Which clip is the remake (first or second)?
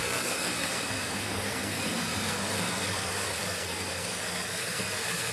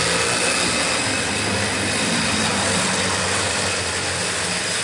first